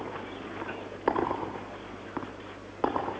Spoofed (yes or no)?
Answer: no